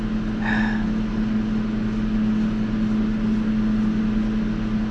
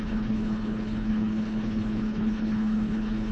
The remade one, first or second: second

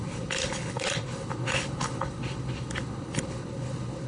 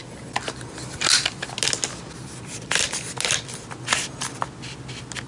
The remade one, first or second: first